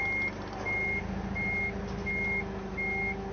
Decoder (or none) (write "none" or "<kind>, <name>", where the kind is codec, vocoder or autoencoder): none